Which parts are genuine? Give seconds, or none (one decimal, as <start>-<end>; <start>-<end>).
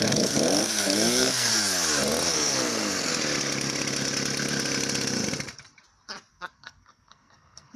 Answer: 1.5-2.3; 3.1-6.3